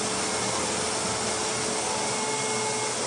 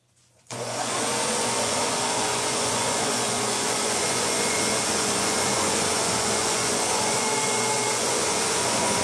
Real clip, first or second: first